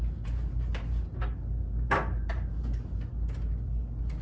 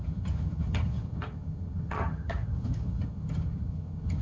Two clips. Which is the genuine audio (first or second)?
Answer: first